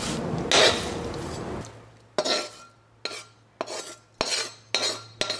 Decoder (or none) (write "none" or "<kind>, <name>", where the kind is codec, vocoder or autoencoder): none